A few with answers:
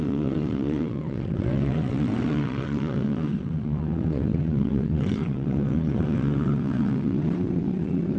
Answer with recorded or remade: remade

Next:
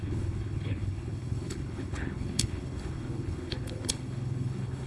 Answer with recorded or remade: remade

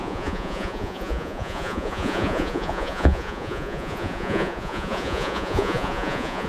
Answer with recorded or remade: remade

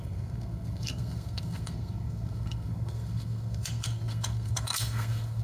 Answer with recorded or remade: remade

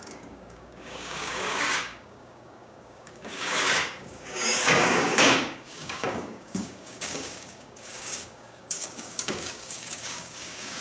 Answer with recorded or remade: remade